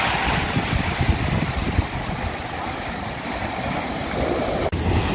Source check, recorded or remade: remade